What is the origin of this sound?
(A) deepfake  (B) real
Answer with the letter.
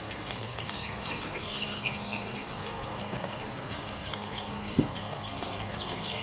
A